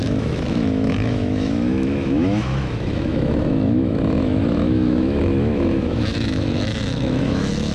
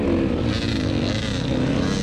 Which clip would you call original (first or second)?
second